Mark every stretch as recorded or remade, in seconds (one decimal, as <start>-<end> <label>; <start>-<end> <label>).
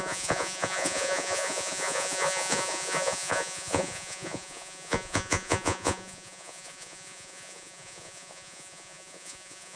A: 0.0-9.8 remade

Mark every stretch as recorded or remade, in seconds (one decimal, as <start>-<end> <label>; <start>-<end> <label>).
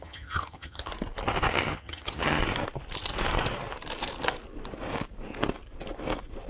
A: 0.0-0.9 remade; 0.9-1.5 recorded; 1.5-2.4 remade; 2.4-6.5 recorded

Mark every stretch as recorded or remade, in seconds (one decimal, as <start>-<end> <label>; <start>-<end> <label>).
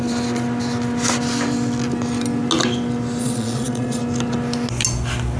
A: 0.0-3.2 recorded; 3.2-4.0 remade; 4.0-5.4 recorded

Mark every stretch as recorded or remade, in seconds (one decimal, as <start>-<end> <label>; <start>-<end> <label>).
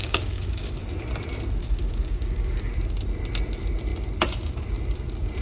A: 0.0-0.7 remade; 0.7-1.6 recorded; 1.6-2.7 remade; 2.7-5.4 recorded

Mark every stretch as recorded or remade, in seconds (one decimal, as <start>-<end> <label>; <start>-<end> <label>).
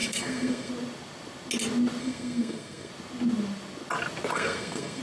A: 0.0-0.7 remade; 0.7-2.0 recorded; 2.0-2.9 remade; 2.9-4.3 recorded; 4.3-5.0 remade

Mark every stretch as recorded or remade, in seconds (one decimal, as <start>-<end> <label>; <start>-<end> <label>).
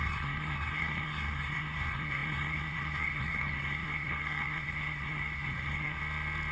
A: 0.0-6.0 remade; 6.0-6.5 recorded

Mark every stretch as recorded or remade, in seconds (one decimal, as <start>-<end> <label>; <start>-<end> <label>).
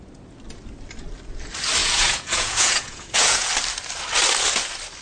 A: 0.0-1.8 recorded; 1.8-3.5 remade; 3.5-5.0 recorded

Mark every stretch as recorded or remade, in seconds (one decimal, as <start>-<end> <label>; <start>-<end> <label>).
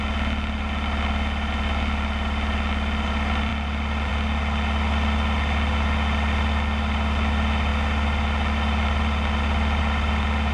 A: 0.0-10.5 recorded